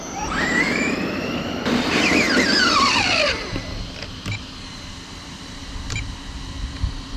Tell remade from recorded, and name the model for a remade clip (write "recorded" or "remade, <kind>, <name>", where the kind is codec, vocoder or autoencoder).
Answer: remade, vocoder, BigVGAN v2